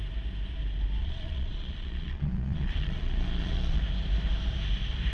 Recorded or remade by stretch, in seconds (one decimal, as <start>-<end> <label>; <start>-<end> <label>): 0.0-1.0 recorded; 1.0-3.8 remade; 3.8-5.1 recorded